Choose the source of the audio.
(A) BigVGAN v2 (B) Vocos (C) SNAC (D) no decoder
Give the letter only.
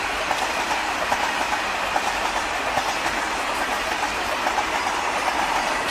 D